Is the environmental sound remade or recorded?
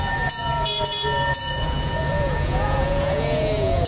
remade